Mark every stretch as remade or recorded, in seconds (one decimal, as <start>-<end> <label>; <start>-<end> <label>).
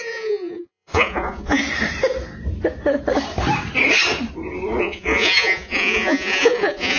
0.0-1.6 remade; 1.6-4.8 recorded; 4.8-7.0 remade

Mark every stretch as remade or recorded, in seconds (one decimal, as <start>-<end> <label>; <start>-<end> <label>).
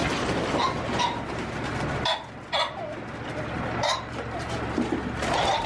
0.0-5.7 recorded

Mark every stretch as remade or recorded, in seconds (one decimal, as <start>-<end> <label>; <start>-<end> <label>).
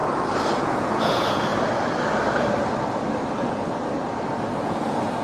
0.0-0.6 recorded; 0.6-1.5 remade; 1.5-4.6 recorded; 4.6-5.2 remade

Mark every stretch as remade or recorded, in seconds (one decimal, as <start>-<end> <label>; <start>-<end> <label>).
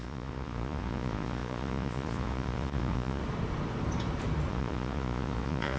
0.0-3.2 remade; 3.2-4.5 recorded; 4.5-5.8 remade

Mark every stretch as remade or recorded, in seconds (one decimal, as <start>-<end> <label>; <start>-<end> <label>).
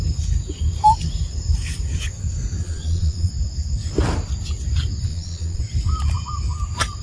0.0-2.6 recorded; 2.6-3.3 remade; 3.3-5.1 recorded; 5.1-5.6 remade; 5.6-7.0 recorded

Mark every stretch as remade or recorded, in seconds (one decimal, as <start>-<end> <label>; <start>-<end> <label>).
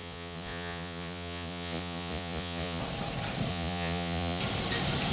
0.0-2.8 remade; 2.8-3.5 recorded; 3.5-4.4 remade; 4.4-5.1 recorded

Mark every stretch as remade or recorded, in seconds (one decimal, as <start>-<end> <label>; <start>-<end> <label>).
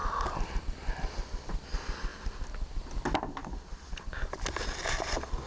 0.0-5.5 recorded